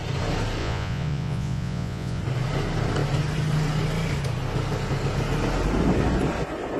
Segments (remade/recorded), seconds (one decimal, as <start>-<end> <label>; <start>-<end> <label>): 0.0-0.6 recorded; 0.6-2.2 remade; 2.2-6.8 recorded